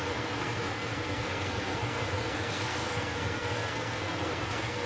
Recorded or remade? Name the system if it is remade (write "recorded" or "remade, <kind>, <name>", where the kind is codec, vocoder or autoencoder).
remade, codec, SNAC